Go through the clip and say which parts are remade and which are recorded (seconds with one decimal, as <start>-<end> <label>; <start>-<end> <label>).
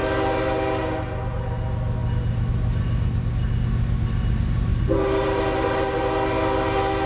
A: 0.0-4.7 recorded; 4.7-6.0 remade; 6.0-7.1 recorded